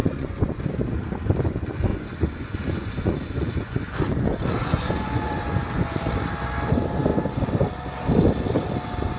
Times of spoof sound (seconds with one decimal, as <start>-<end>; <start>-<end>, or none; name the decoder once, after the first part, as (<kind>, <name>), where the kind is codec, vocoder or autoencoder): 0.0-0.6 (vocoder, Vocos); 1.9-6.0